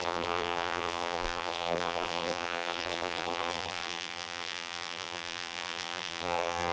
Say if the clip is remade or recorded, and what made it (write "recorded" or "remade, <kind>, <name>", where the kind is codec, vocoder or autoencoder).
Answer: remade, vocoder, BigVGAN v2